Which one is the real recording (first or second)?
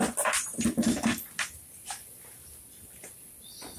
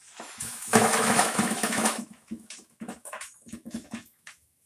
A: first